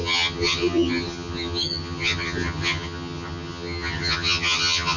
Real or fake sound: fake